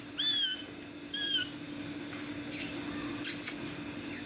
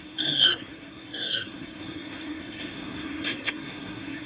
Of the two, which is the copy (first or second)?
second